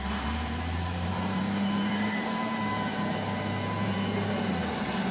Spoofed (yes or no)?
yes